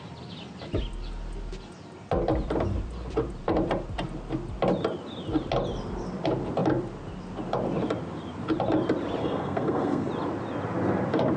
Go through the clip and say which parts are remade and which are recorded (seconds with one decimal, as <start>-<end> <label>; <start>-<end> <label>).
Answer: 0.0-9.2 recorded; 9.2-10.1 remade; 10.1-11.4 recorded